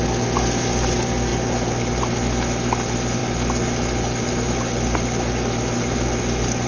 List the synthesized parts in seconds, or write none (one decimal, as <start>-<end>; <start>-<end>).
none